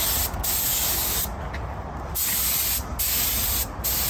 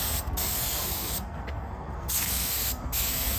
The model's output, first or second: second